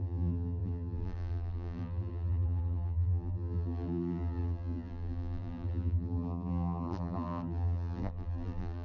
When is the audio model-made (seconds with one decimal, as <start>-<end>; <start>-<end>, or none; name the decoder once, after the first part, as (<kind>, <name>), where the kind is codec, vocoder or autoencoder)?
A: 0.0-8.8 (vocoder, BigVGAN v2)